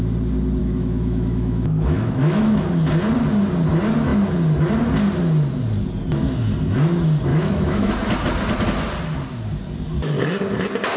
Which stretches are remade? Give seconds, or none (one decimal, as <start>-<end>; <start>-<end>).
0.6-2.6; 7.3-7.9

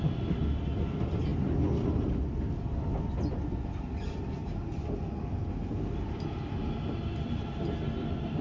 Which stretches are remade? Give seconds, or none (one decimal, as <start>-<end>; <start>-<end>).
none

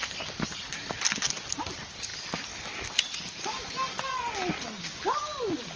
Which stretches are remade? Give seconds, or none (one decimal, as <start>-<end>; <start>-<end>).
none

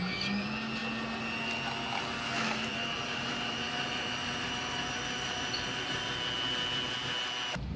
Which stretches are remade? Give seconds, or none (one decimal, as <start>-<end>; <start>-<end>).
2.7-6.0